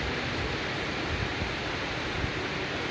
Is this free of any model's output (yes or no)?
yes